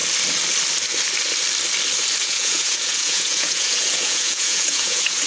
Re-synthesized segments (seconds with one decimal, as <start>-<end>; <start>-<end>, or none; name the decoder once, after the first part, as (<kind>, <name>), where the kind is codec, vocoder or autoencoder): 2.2-5.3 (vocoder, Vocos)

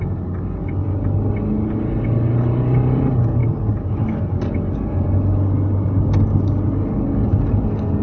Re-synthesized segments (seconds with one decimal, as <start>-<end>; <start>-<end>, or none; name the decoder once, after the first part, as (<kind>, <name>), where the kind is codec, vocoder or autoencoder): none

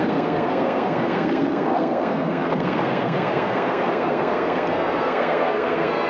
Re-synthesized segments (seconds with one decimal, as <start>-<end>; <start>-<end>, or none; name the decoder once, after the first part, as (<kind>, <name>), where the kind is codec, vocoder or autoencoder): 0.0-6.1 (codec, SNAC)

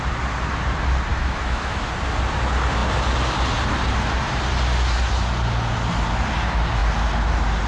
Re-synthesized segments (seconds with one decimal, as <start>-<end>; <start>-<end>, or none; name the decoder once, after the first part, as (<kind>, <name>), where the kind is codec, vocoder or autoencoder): 1.1-1.9 (autoencoder, DAC-VAE)

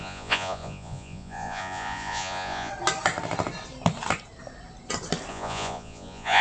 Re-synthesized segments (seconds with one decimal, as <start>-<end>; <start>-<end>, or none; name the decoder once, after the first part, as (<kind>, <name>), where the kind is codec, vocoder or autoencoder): 0.0-2.7 (vocoder, Vocos); 5.3-6.4

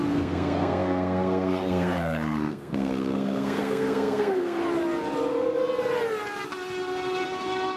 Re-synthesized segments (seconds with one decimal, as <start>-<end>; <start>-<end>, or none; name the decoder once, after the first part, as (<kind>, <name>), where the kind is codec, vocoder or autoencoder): 0.0-4.6 (codec, SNAC)